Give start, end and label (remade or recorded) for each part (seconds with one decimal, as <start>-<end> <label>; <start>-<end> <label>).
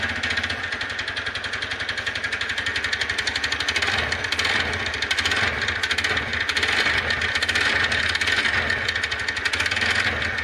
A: 0.0-10.4 recorded